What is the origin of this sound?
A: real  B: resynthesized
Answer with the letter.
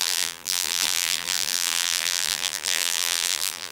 B